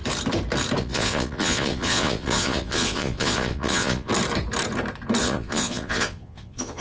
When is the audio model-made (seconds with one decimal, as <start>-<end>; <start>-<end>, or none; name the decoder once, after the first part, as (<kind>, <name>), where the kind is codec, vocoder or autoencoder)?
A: 0.8-4.1 (vocoder, Vocos); 5.2-6.8